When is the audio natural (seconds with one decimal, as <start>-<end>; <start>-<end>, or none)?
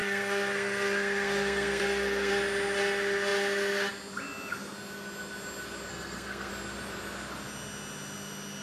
2.3-5.9; 6.5-8.6